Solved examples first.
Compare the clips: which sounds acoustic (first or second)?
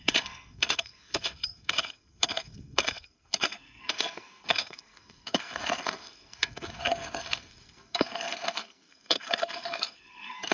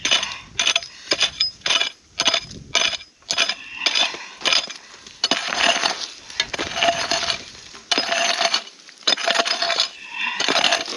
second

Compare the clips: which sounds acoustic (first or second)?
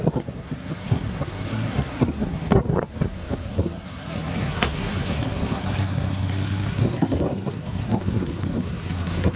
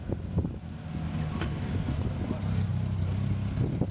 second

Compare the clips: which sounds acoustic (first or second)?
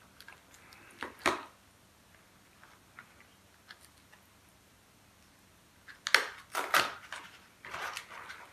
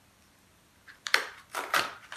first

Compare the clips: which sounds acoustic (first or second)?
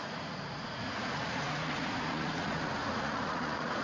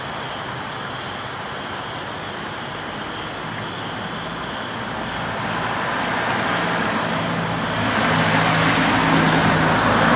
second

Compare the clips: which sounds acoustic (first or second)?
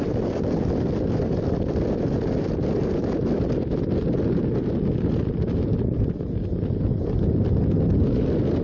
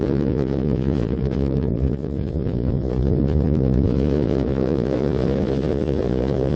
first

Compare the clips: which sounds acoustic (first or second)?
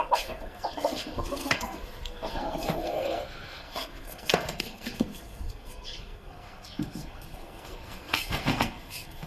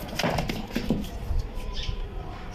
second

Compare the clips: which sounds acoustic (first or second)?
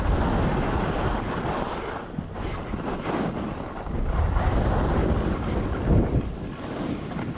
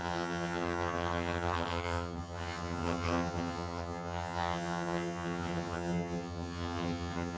first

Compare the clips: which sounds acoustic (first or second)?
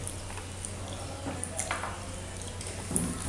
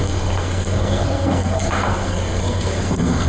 first